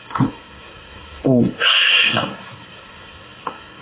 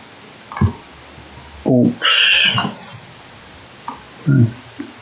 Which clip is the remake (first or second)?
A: first